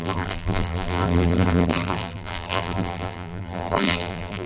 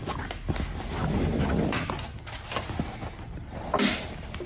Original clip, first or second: second